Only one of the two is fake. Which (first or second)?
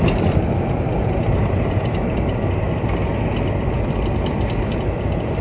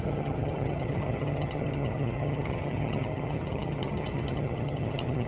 second